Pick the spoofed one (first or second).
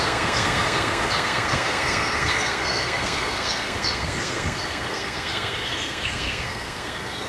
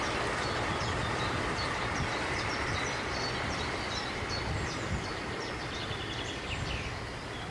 first